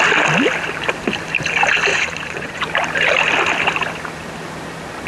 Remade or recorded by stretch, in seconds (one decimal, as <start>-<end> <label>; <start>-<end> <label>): 0.0-1.9 recorded; 1.9-2.6 remade; 2.6-5.1 recorded